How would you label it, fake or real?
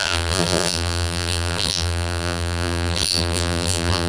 fake